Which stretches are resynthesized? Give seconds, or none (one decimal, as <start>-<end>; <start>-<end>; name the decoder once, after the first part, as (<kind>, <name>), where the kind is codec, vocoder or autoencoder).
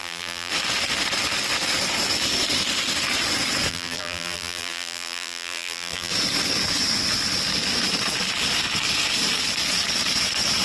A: 0.0-0.5 (vocoder, BigVGAN v2); 3.7-6.1